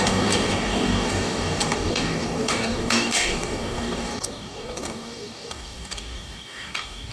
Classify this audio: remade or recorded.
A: remade